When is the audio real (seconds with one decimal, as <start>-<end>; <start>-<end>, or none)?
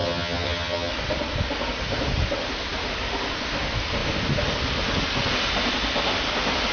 0.9-6.7